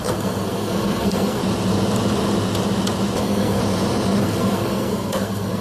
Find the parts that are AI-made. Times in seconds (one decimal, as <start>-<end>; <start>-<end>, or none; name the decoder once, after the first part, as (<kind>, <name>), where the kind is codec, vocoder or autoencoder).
0.0-1.4 (codec, SNAC); 3.2-3.6; 4.2-5.6